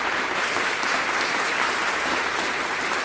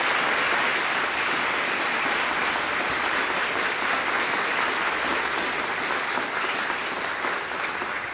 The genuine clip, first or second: second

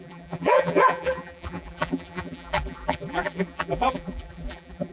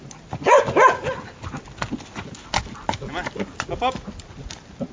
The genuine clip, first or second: second